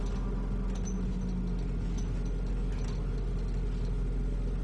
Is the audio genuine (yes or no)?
yes